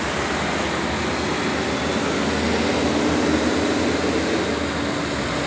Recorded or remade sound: recorded